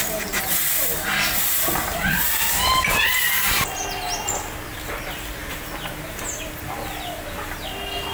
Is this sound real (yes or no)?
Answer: yes